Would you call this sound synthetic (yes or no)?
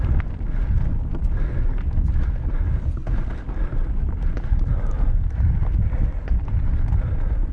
no